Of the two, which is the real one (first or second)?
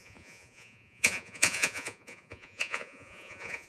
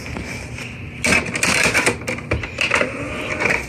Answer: second